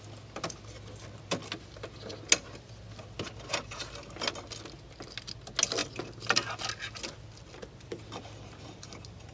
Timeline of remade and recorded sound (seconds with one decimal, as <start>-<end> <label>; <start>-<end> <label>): 0.0-9.3 recorded